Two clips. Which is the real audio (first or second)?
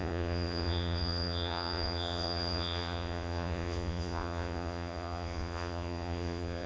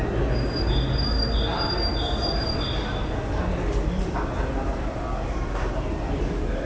second